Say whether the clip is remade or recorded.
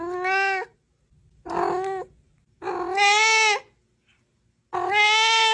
recorded